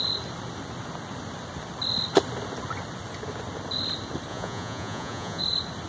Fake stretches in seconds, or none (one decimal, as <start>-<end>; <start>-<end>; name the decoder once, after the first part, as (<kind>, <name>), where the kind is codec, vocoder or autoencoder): 4.3-5.4 (vocoder, Vocos)